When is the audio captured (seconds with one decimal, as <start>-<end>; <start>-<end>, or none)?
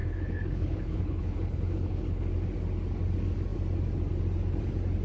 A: 2.3-5.0